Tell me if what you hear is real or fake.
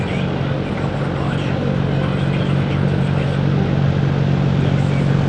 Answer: real